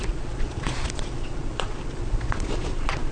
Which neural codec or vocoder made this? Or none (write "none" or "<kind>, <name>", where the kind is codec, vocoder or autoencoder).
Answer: vocoder, Vocos